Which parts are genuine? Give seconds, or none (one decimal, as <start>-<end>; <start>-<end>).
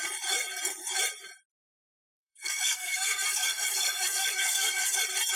0.0-1.8; 5.0-5.4